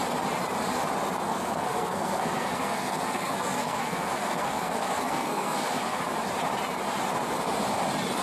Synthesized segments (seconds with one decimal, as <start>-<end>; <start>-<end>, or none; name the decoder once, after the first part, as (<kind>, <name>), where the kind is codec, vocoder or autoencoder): 1.3-6.0 (codec, SNAC)